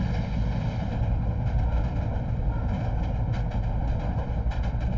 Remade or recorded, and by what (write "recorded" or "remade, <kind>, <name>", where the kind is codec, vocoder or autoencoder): recorded